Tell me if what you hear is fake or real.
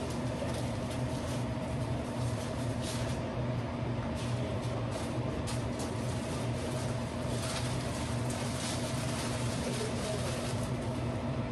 fake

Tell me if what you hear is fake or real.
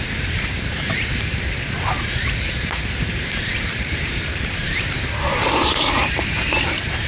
fake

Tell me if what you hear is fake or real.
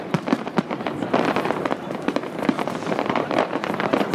fake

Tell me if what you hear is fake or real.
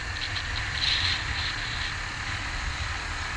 real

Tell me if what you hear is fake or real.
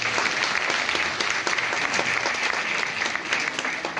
real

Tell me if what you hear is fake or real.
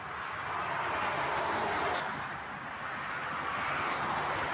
real